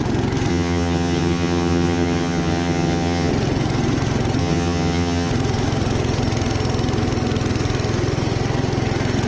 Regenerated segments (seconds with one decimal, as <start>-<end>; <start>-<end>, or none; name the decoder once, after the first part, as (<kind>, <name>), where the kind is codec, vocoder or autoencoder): 0.5-3.3 (vocoder, HiFi-GAN); 4.4-5.3